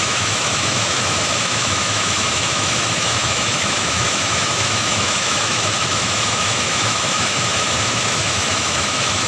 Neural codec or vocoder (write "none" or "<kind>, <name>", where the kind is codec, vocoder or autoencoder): autoencoder, DAC-VAE